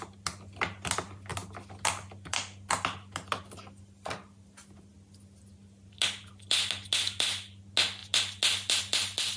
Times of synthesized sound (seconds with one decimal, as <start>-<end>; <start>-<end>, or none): none